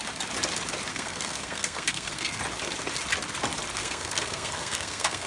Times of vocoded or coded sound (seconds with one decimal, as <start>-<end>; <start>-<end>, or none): 0.9-2.4; 3.8-5.3